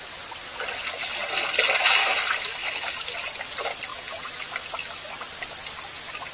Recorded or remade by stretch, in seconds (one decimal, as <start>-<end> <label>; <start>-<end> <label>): 0.0-2.0 recorded; 2.0-3.0 remade; 3.0-3.9 recorded; 3.9-5.1 remade; 5.1-6.3 recorded